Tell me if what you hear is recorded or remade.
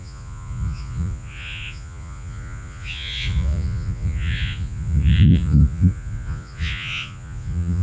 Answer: remade